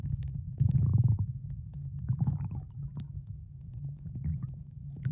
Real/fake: fake